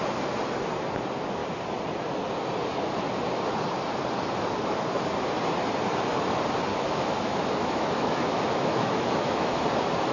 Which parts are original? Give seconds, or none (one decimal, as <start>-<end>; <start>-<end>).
0.0-6.7; 9.5-10.1